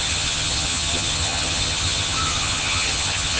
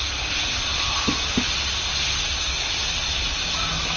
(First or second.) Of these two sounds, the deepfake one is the first